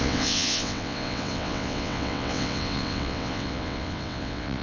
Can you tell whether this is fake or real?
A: fake